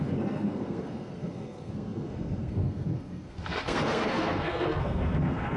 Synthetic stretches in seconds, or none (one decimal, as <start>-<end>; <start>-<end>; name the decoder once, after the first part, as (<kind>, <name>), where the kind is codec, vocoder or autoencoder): 0.0-5.6 (codec, SNAC)